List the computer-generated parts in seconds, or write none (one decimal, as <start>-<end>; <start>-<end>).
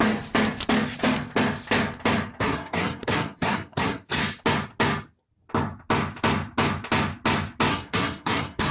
2.4-4.2; 7.7-8.7